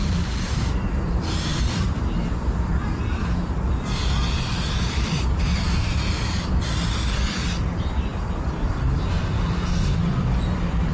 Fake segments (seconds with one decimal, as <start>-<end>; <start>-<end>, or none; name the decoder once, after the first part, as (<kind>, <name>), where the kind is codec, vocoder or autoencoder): 0.0-10.9 (vocoder, BigVGAN v2)